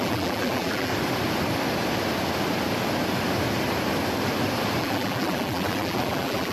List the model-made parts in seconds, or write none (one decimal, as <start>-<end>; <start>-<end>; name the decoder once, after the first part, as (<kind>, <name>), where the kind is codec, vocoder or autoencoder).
0.0-0.9 (vocoder, BigVGAN v2); 4.8-6.5